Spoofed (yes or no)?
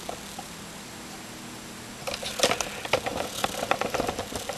no